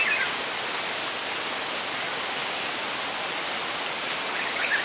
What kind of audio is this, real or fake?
real